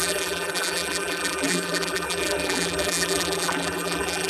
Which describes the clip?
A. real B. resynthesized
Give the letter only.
B